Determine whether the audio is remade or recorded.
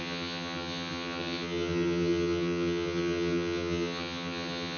remade